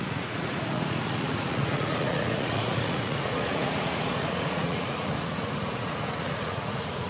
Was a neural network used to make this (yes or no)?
yes